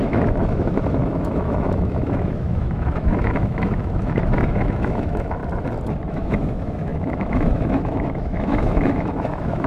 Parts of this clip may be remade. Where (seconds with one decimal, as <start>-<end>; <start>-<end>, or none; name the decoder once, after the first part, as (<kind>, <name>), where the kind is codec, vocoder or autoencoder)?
0.0-5.4 (autoencoder, DAC-VAE); 6.1-9.7